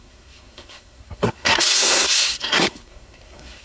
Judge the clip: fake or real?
fake